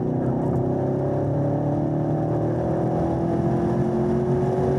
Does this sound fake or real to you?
real